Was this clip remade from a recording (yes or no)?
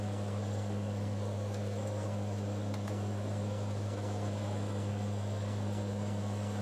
yes